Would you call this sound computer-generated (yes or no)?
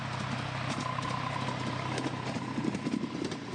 no